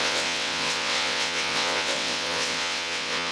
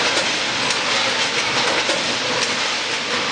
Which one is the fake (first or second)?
first